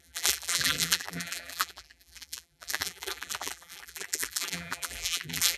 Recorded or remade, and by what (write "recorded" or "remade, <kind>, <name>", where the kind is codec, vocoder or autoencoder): remade, vocoder, BigVGAN v2